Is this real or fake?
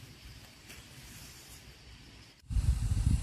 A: fake